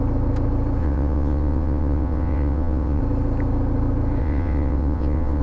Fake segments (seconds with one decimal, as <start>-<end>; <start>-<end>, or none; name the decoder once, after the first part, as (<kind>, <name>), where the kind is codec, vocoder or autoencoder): 0.8-3.0 (vocoder, WaveNeXt); 4.2-5.4